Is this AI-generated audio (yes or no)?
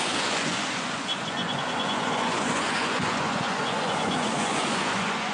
yes